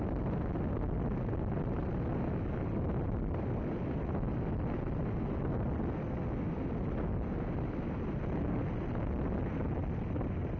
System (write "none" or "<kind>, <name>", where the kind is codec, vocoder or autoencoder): none